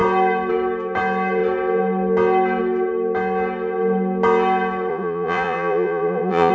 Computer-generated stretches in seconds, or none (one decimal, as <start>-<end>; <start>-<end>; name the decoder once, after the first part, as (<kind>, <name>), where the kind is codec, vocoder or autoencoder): 4.9-6.5 (vocoder, Vocos)